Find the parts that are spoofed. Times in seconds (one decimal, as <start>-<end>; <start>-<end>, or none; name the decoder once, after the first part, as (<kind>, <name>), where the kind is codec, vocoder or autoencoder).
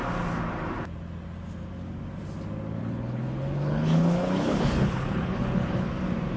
2.8-5.9 (codec, HILCodec)